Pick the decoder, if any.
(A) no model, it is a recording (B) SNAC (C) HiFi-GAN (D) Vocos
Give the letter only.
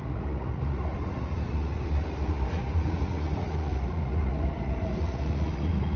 D